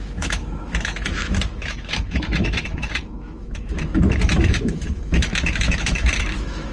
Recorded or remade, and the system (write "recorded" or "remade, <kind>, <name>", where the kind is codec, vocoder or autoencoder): remade, autoencoder, DAC-VAE